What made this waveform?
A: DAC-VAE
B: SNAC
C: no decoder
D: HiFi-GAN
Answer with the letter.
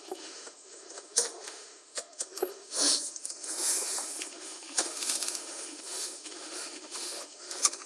A